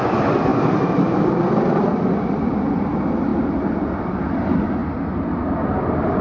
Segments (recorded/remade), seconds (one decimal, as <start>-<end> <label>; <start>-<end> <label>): 0.0-0.5 remade; 0.5-1.8 recorded; 1.8-3.3 remade; 3.3-4.0 recorded; 4.0-4.8 remade; 4.8-5.6 recorded; 5.6-6.2 remade